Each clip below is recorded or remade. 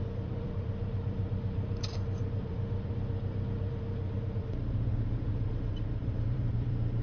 remade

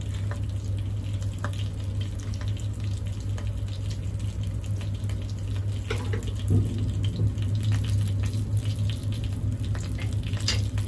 recorded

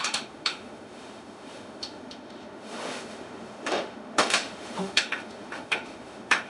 remade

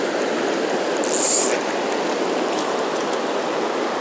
recorded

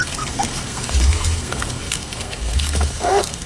remade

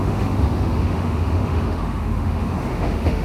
remade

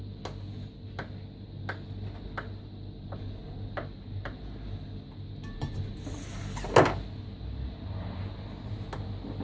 recorded